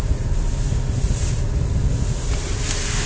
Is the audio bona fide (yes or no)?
yes